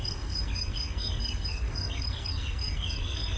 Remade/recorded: remade